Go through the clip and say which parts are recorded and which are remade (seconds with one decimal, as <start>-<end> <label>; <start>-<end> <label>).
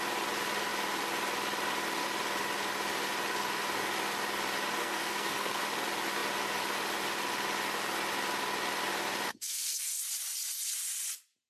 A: 0.0-4.8 recorded; 4.8-5.6 remade; 5.6-9.3 recorded; 9.3-10.0 remade; 10.0-11.5 recorded